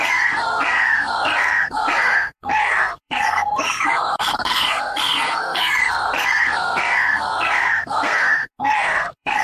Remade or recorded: remade